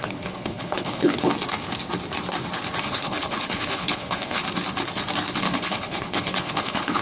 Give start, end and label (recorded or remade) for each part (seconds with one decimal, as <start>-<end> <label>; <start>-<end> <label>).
0.0-1.3 remade; 1.3-2.8 recorded; 2.8-4.4 remade; 4.4-5.4 recorded; 5.4-7.0 remade